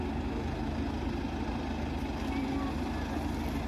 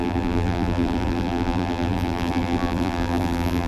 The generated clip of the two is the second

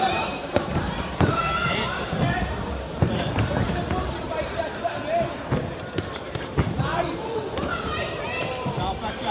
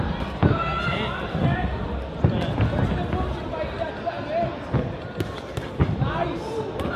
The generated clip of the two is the first